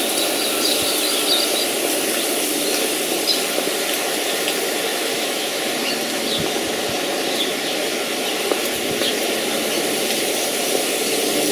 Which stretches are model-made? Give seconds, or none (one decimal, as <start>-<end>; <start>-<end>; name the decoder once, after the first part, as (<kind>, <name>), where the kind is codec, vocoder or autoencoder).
4.9-5.6 (autoencoder, DAC-VAE)